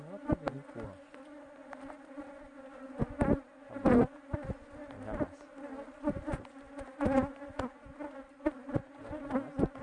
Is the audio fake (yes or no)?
no